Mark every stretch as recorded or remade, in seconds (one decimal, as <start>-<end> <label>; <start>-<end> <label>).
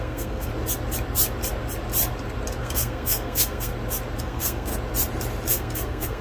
0.0-0.5 remade; 0.5-2.6 recorded; 2.6-3.7 remade; 3.7-4.2 recorded; 4.2-4.7 remade; 4.7-5.5 recorded; 5.5-6.2 remade